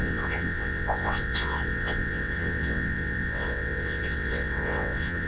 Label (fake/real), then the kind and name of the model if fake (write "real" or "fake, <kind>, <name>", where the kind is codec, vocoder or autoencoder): fake, vocoder, WaveNeXt